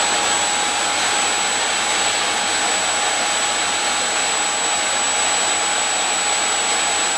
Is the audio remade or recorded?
recorded